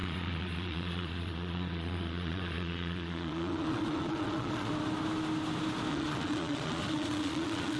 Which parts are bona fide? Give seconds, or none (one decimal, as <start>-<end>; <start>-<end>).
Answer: 4.7-5.9